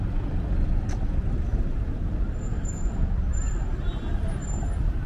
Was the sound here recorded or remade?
recorded